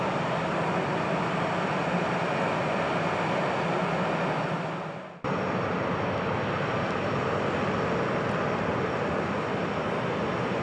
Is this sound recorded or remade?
recorded